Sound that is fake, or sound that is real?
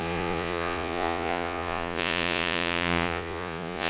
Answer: fake